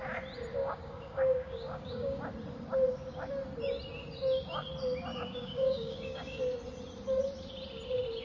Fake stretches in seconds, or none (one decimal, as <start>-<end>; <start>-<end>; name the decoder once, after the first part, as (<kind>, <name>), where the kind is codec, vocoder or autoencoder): 0.6-2.2 (codec, DAC); 5.1-6.4